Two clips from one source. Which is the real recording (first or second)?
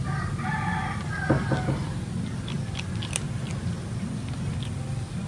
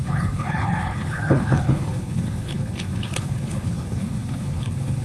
first